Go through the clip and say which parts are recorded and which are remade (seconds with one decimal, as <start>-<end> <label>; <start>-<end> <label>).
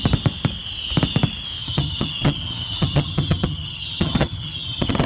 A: 0.0-1.6 recorded; 1.6-5.1 remade